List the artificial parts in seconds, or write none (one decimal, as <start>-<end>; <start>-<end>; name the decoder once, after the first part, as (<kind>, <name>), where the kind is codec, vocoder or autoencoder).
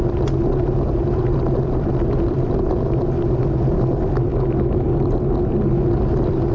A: none